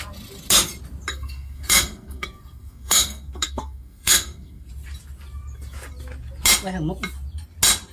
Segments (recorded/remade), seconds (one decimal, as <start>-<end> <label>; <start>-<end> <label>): 0.0-1.1 recorded; 1.1-4.7 remade; 4.7-7.9 recorded